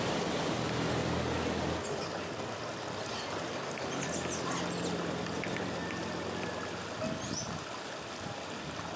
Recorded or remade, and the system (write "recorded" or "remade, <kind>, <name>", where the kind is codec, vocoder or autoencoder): recorded